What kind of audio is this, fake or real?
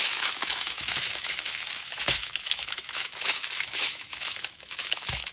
fake